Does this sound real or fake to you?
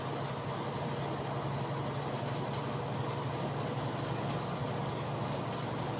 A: real